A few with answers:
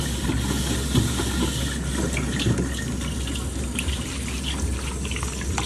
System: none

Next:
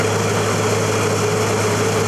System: none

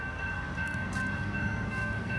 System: codec, SNAC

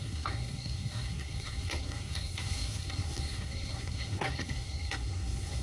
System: codec, SNAC